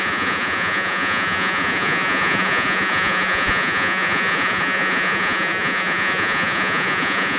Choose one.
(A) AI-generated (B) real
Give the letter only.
A